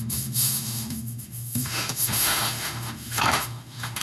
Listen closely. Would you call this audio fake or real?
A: fake